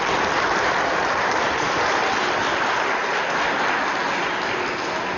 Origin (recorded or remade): recorded